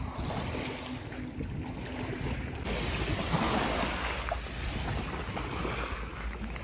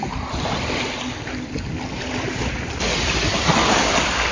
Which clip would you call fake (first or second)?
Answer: second